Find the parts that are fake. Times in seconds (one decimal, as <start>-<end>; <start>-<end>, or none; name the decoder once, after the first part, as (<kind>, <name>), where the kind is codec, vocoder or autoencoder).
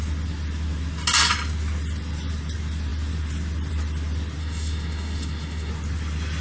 4.4-5.7 (autoencoder, DAC-VAE)